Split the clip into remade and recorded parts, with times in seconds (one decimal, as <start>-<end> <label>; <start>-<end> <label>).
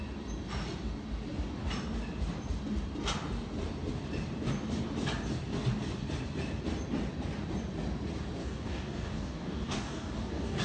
0.0-8.4 recorded; 8.4-10.6 remade